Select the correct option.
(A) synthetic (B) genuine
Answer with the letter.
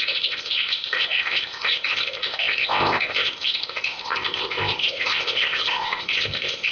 A